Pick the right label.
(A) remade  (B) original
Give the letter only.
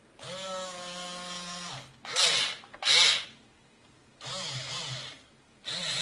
B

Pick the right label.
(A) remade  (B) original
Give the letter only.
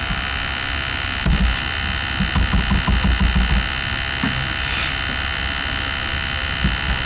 B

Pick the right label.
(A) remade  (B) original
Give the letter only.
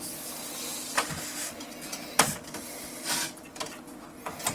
B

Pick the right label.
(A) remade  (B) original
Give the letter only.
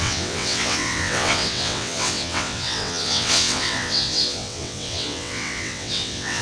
A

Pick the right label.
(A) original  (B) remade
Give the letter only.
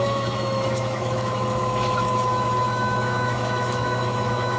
B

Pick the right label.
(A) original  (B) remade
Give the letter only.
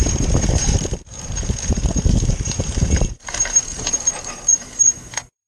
B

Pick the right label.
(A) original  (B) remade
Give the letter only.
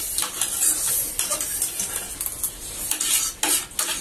A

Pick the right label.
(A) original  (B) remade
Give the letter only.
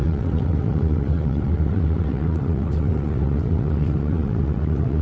B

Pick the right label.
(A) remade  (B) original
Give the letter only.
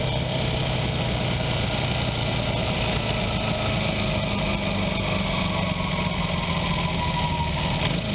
B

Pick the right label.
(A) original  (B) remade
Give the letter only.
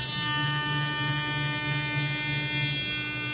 A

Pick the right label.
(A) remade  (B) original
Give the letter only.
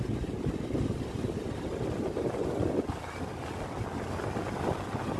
B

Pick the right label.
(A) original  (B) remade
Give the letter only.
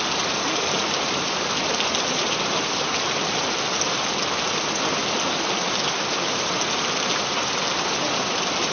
B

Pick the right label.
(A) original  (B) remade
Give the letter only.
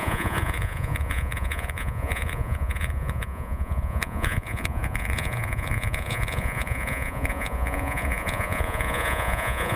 B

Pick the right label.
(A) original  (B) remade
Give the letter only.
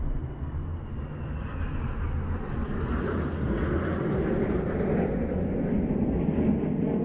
A